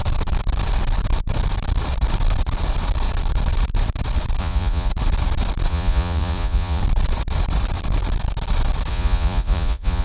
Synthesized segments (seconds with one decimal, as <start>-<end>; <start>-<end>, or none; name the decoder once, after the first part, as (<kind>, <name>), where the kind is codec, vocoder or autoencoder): 4.4-4.9 (vocoder, Vocos); 5.7-6.8; 8.9-10.0